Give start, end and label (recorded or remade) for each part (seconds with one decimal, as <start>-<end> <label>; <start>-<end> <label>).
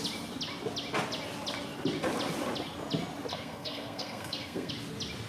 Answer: 0.0-3.3 recorded; 3.3-4.7 remade; 4.7-5.3 recorded